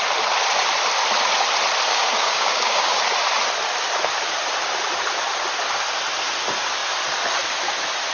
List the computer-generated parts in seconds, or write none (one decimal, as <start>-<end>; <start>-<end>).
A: 1.9-3.0